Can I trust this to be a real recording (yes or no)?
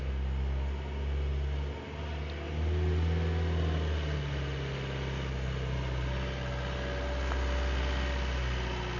yes